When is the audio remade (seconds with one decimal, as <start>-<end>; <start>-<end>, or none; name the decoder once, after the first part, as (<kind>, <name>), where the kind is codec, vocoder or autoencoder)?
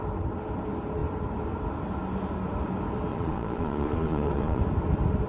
3.1-4.6 (vocoder, Vocos)